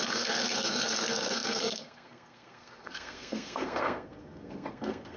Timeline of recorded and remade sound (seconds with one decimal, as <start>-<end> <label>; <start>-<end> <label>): 0.0-5.2 remade

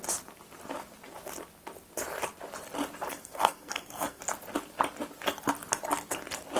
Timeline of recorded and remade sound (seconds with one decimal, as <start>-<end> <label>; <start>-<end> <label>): 0.0-3.1 recorded; 3.1-4.2 remade; 4.2-6.6 recorded

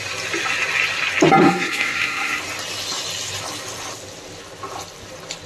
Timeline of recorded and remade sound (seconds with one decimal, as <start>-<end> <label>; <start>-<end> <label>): 0.0-1.4 recorded; 1.4-2.4 remade; 2.4-5.5 recorded

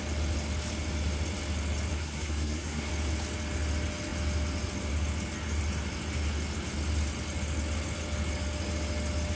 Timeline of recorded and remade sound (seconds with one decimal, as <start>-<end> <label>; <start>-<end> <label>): 0.0-1.9 recorded; 1.9-2.9 remade; 2.9-9.4 recorded

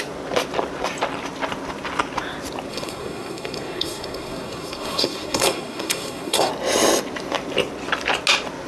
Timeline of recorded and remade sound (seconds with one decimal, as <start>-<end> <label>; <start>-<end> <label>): 0.0-2.7 recorded; 2.7-6.5 remade; 6.5-8.7 recorded

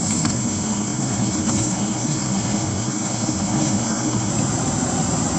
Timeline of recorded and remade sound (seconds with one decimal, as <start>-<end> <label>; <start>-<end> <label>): 0.0-4.3 remade; 4.3-5.4 recorded

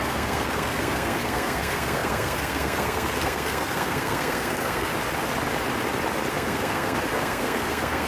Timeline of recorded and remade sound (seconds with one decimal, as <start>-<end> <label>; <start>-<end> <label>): 0.0-4.9 remade; 4.9-6.3 recorded; 6.3-8.1 remade